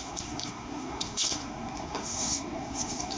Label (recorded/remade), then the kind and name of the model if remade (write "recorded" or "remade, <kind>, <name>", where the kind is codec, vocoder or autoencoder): remade, codec, SNAC